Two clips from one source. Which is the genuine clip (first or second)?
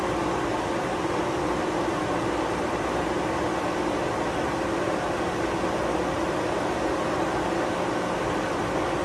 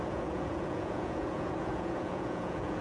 first